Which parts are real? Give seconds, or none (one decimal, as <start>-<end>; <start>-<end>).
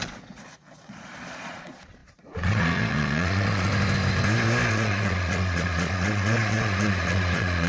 3.7-4.7